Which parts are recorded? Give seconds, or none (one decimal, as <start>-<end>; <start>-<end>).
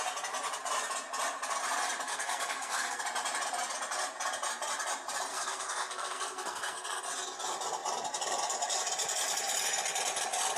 0.0-2.1; 3.0-5.3; 7.0-10.6